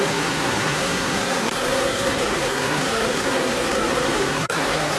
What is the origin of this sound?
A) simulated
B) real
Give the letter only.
A